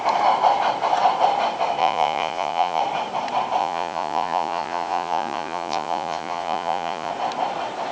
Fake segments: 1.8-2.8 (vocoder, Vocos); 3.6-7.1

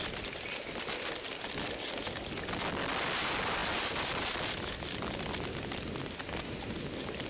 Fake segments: none